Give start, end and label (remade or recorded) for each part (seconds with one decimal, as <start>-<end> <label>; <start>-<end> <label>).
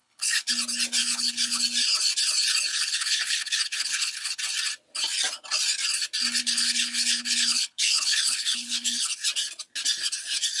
0.0-0.5 remade; 0.5-1.0 recorded; 1.0-1.6 remade; 1.6-2.7 recorded; 2.7-4.4 remade; 4.4-6.4 recorded; 6.4-9.2 remade; 9.2-10.6 recorded